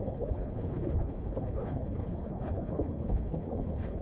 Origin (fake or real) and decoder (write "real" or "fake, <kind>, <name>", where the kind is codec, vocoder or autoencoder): fake, codec, HILCodec